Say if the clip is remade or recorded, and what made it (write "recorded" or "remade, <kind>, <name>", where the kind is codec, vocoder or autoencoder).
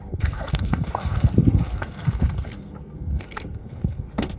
remade, codec, SNAC